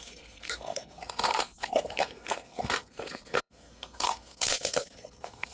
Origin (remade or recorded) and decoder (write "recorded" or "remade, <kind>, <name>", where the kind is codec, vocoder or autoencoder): remade, codec, SNAC